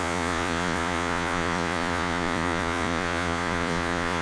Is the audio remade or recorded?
remade